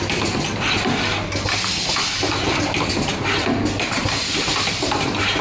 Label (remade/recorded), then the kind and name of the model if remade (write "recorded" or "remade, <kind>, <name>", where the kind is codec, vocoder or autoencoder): recorded